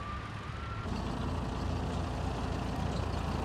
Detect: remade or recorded recorded